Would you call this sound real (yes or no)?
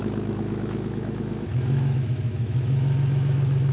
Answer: no